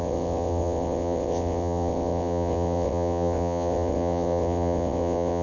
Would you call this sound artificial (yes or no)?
yes